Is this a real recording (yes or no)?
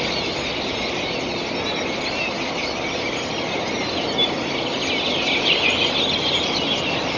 yes